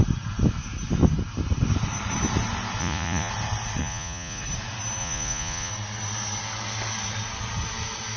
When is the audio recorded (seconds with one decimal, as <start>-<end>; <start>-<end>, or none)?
0.0-2.8; 3.3-3.8; 4.4-5.0; 5.7-8.2